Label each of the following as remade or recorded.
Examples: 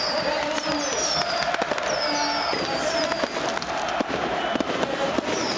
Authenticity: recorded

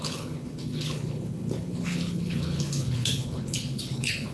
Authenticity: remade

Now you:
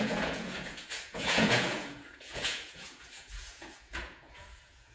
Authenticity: remade